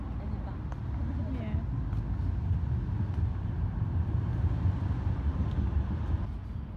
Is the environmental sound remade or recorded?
recorded